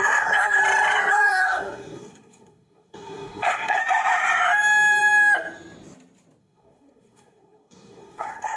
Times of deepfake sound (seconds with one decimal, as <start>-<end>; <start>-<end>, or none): 0.0-0.6; 1.1-3.8; 6.4-8.6